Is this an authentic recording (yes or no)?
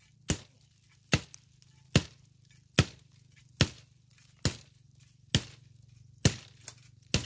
yes